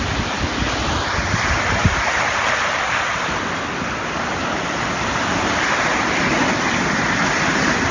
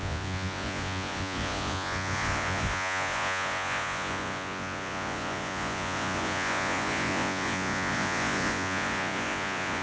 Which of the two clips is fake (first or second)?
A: second